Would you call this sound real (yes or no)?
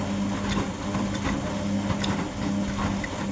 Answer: yes